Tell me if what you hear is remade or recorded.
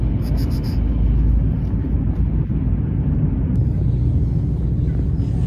recorded